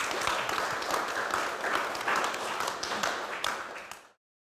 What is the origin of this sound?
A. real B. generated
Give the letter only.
A